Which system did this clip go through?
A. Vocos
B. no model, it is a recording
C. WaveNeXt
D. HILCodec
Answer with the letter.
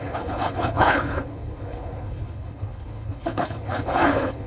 D